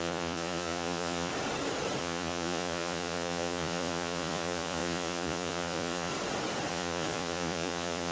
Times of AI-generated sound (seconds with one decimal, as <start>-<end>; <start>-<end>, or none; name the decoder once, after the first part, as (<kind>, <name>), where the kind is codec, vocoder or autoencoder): 0.0-1.3 (vocoder, Vocos); 2.0-6.1; 6.7-8.1